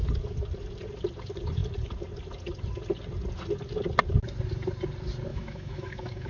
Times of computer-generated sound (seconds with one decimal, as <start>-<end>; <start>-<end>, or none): 5.3-6.3